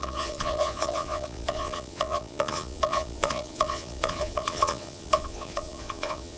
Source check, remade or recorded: remade